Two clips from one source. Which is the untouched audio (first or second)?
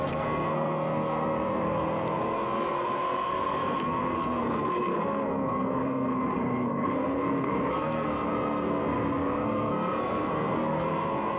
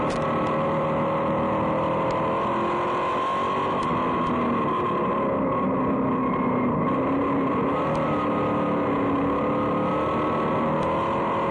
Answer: second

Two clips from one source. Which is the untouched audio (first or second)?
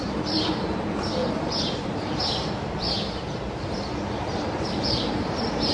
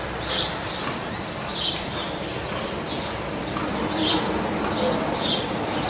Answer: second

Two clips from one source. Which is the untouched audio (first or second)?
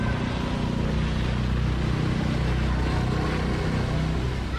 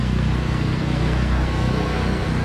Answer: first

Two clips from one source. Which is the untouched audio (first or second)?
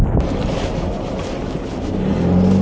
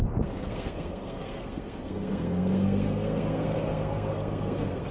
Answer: first